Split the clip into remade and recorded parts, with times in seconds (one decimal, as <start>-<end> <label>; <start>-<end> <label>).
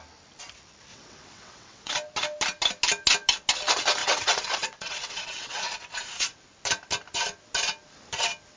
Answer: 0.0-0.9 recorded; 0.9-1.9 remade; 1.9-4.0 recorded; 4.0-5.6 remade; 5.6-8.6 recorded